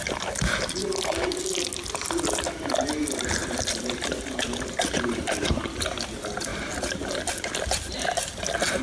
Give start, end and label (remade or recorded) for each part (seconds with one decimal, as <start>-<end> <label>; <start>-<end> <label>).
0.0-3.4 recorded; 3.4-5.8 remade; 5.8-8.8 recorded